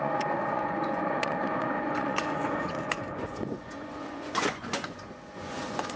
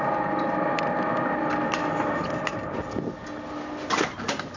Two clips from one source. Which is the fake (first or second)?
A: first